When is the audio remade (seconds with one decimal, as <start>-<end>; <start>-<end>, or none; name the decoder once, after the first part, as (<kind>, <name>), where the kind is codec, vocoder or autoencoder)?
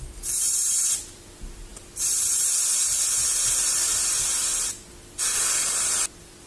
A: none